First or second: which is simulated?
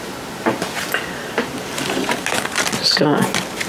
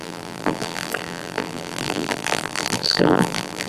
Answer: second